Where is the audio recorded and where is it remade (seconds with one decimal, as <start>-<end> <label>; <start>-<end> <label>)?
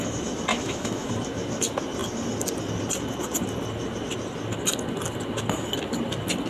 0.0-0.5 recorded; 0.5-1.1 remade; 1.1-6.5 recorded